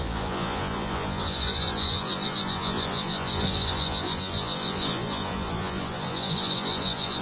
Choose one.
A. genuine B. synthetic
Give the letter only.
B